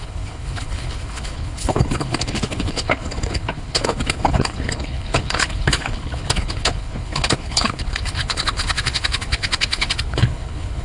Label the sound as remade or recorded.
remade